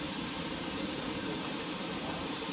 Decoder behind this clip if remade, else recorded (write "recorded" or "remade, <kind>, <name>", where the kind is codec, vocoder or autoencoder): remade, vocoder, BigVGAN v2